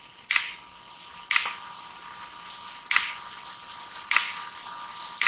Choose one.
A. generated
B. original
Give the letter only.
B